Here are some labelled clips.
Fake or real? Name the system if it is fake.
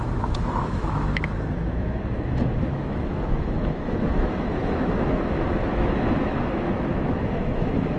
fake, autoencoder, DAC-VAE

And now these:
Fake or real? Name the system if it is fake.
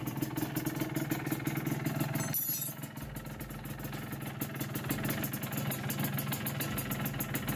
real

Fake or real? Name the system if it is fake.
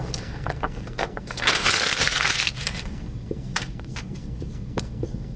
fake, codec, SNAC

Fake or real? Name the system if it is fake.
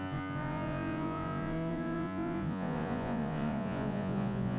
fake, vocoder, Vocos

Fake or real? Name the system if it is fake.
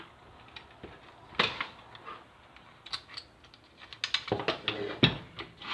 real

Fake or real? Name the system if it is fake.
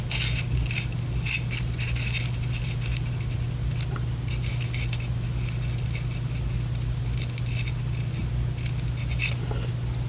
real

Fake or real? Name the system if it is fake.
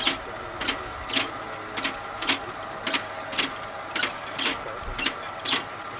real